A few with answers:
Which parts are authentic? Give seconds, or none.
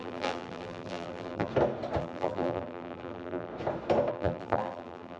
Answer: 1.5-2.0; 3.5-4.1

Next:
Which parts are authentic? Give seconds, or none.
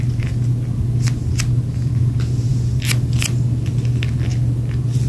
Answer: 0.0-5.1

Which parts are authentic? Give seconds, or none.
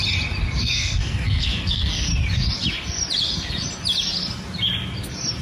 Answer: 0.0-0.6; 2.1-5.4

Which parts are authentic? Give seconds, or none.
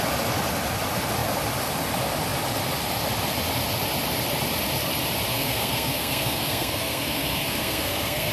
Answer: 0.0-5.3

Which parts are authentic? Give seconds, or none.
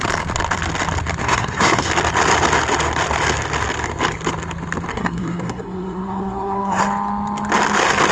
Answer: 0.0-1.2; 1.9-4.9; 6.8-8.1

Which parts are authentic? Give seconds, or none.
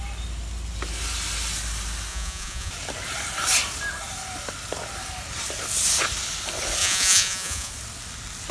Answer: 0.0-2.1; 2.7-6.8; 7.7-8.5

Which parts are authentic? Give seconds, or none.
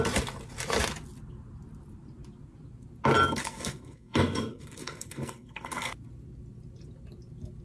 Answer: 0.0-3.3; 5.9-7.6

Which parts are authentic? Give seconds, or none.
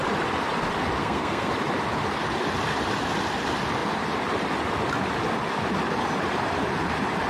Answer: 0.0-1.0; 1.5-7.3